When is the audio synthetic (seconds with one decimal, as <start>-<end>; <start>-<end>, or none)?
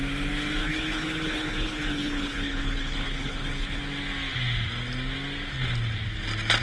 0.6-3.8